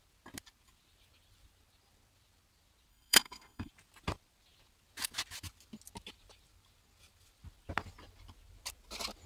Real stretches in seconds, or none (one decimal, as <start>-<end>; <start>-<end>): 0.0-2.9; 3.7-9.3